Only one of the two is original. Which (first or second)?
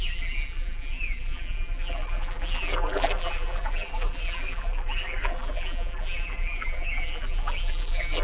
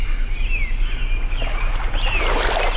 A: second